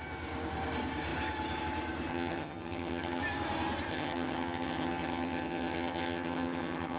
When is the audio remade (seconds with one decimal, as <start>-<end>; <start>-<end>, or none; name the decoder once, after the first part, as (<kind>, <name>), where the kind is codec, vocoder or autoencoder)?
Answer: 2.1-3.2 (vocoder, HiFi-GAN); 3.9-7.0